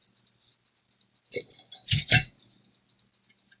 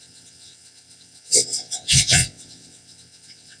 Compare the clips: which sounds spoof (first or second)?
second